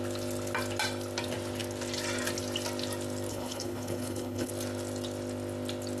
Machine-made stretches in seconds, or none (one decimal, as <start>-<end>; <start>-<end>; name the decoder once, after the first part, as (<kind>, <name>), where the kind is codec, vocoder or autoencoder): 3.3-4.5 (codec, HILCodec)